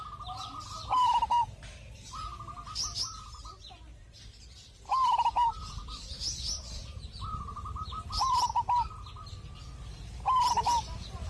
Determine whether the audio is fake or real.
fake